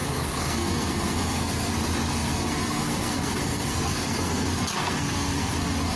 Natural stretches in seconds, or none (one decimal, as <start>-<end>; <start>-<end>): 1.7-2.1